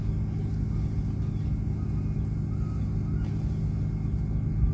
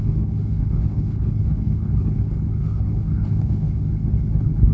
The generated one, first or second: second